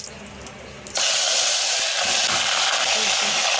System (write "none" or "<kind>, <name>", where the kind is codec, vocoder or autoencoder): none